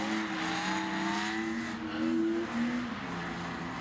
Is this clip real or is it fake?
real